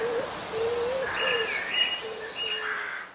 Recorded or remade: recorded